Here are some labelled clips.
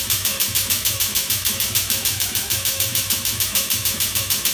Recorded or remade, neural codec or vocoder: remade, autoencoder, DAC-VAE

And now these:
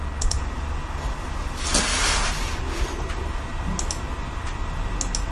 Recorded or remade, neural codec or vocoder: recorded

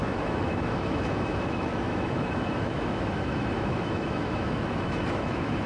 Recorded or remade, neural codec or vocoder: remade, autoencoder, DAC-VAE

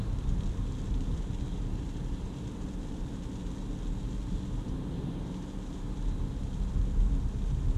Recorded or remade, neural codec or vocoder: recorded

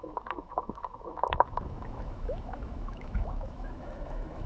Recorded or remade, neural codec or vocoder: remade, autoencoder, DAC-VAE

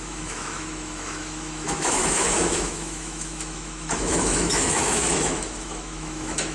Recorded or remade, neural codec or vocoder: remade, autoencoder, DAC-VAE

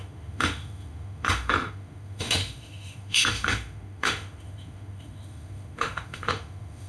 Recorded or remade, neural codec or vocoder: remade, autoencoder, DAC-VAE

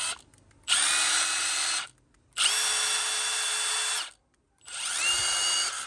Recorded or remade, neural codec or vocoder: recorded